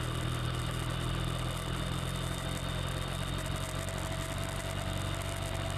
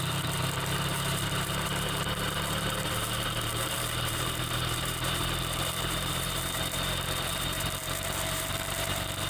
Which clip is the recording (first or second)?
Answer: first